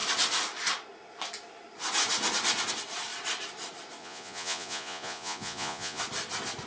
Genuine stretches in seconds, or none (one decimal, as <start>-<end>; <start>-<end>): 0.0-4.0; 6.0-6.7